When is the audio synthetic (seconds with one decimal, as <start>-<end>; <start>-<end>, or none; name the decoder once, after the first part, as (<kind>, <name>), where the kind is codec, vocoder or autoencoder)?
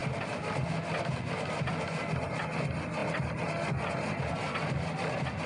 none